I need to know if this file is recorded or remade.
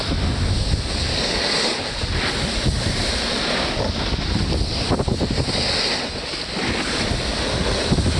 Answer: recorded